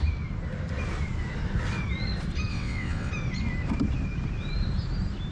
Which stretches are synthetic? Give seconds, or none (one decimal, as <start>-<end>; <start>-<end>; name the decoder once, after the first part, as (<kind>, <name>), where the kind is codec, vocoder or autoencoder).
2.5-3.1 (vocoder, WaveNeXt)